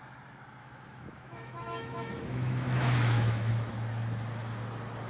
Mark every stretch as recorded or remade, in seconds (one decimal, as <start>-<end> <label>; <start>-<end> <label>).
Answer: 0.0-0.6 recorded; 0.6-3.5 remade; 3.5-5.1 recorded